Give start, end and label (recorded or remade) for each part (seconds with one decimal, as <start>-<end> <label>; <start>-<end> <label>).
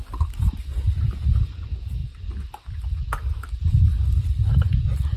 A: 0.0-5.2 recorded